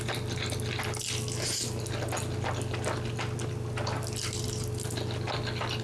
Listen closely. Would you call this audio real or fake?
real